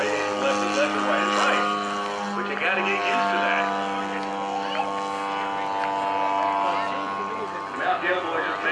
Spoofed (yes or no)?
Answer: no